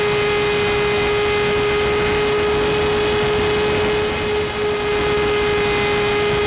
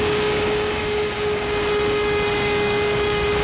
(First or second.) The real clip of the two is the first